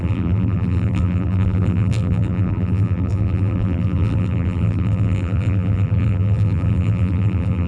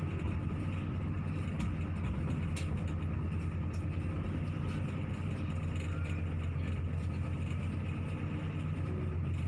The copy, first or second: first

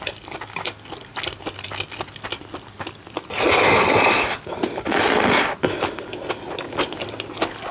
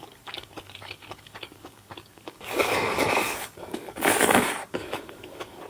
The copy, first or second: second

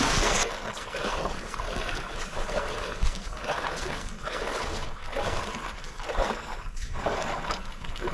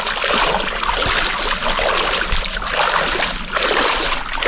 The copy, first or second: first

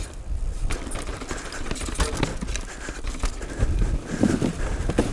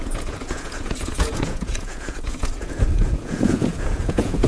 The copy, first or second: second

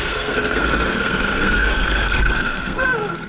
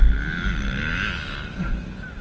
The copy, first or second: first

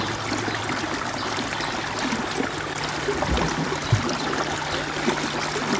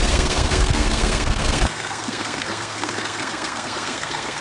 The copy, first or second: second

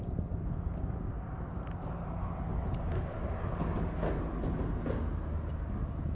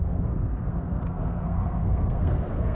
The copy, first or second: second